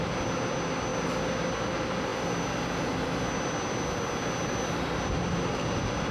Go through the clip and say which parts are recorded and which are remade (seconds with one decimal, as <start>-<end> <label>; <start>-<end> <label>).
0.0-6.1 recorded